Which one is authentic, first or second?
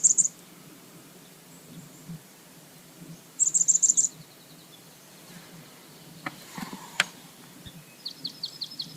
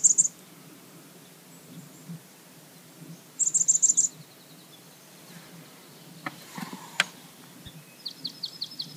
second